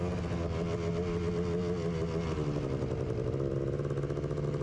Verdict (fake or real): real